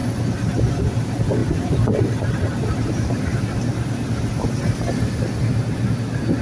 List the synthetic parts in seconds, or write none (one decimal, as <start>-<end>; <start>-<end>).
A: 0.0-0.6; 1.4-5.2